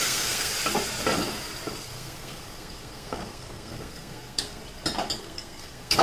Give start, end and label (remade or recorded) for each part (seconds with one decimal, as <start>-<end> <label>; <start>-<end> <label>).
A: 0.0-0.5 remade; 0.5-1.8 recorded; 1.8-4.6 remade; 4.6-5.2 recorded; 5.2-6.0 remade

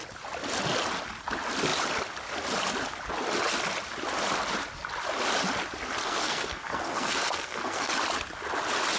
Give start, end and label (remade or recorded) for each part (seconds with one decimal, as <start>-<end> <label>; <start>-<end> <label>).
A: 0.0-6.0 recorded; 6.0-7.9 remade; 7.9-9.0 recorded

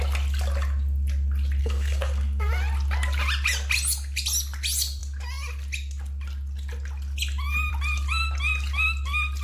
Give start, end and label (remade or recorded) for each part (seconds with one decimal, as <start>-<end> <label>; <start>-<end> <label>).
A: 0.0-1.6 recorded; 1.6-2.5 remade; 2.5-9.4 recorded

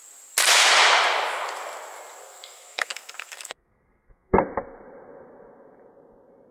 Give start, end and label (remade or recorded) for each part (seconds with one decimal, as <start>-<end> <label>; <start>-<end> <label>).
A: 0.0-2.2 recorded; 2.2-4.4 remade; 4.4-6.5 recorded

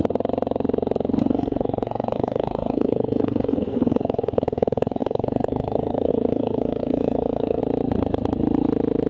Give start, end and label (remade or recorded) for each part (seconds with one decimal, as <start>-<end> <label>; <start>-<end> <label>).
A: 0.0-1.2 recorded; 1.2-7.6 remade; 7.6-9.1 recorded

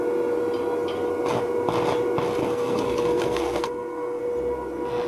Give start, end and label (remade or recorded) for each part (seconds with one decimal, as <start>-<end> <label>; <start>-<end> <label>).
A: 0.0-2.4 recorded; 2.4-4.2 remade; 4.2-5.1 recorded

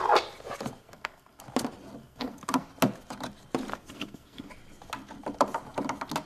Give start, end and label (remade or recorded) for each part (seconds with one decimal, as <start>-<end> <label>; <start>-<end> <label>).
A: 0.0-0.8 recorded; 0.8-1.4 remade; 1.4-2.0 recorded; 2.0-2.7 remade; 2.7-3.7 recorded; 3.7-4.5 remade; 4.5-6.3 recorded